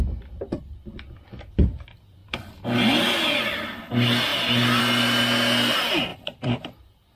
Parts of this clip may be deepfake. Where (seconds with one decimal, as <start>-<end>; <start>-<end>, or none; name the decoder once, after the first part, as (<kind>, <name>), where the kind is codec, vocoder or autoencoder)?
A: 6.1-6.6 (vocoder, BigVGAN v2)